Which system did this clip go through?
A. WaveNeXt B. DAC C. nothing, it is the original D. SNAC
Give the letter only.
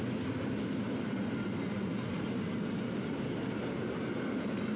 C